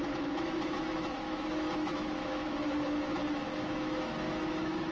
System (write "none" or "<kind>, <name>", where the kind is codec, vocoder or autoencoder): autoencoder, DAC-VAE